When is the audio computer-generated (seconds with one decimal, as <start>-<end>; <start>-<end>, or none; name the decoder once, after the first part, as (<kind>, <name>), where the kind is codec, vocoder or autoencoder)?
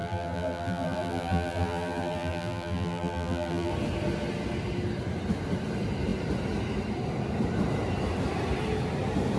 0.0-3.7 (vocoder, BigVGAN v2)